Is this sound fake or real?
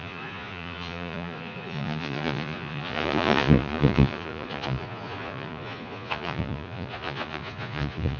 fake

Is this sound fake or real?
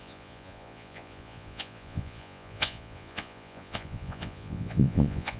fake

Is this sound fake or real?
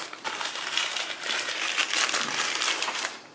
real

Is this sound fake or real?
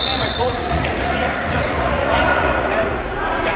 fake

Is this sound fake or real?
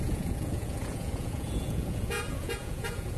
fake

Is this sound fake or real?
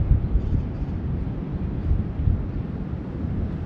real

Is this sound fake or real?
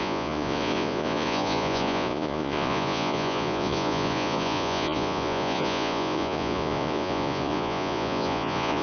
fake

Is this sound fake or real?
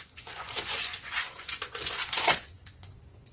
fake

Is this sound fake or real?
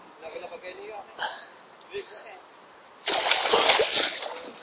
real